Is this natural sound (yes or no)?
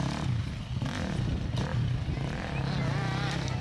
yes